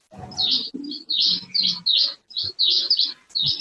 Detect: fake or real real